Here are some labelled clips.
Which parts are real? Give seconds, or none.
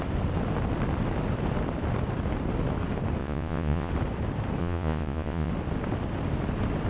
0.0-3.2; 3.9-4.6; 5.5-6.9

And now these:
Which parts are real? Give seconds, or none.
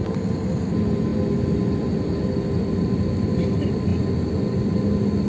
0.0-5.3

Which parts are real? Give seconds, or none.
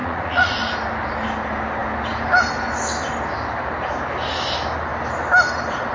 0.7-5.9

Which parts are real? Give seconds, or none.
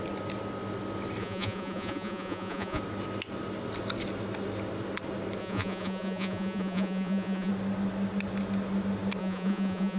0.0-1.2; 2.8-5.4; 7.5-9.2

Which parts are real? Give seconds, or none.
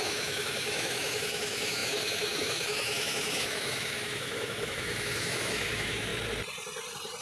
6.1-7.2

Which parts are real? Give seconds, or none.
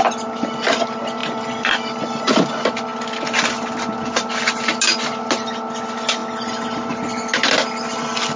0.0-8.4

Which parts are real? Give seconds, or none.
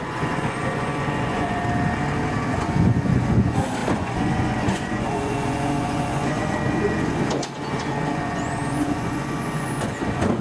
1.6-2.5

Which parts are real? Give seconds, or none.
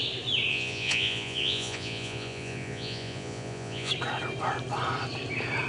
0.0-0.5; 3.9-5.7